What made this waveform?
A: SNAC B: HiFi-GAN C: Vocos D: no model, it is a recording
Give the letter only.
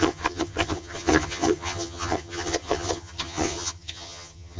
B